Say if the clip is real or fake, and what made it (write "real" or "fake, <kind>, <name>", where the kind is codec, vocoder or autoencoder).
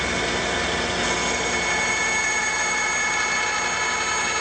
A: real